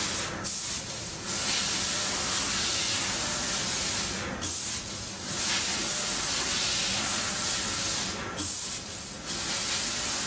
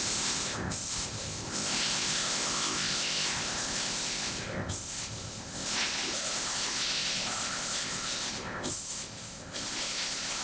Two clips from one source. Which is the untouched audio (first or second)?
first